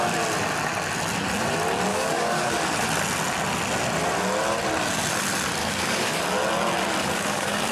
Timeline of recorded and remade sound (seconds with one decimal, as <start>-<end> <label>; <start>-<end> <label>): 0.0-1.9 recorded; 1.9-2.5 remade; 2.5-5.6 recorded; 5.6-6.2 remade; 6.2-7.0 recorded; 7.0-7.7 remade